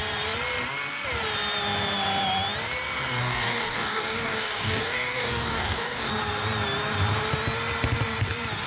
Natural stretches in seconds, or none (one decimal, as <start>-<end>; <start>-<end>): 0.0-3.2; 6.1-8.7